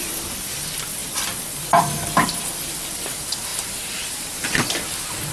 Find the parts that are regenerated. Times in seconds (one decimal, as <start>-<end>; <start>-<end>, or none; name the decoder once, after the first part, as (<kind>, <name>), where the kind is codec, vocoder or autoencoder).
1.0-1.8 (vocoder, BigVGAN v2); 3.5-4.8